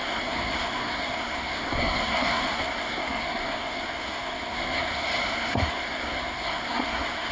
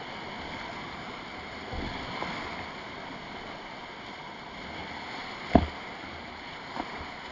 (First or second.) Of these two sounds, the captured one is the second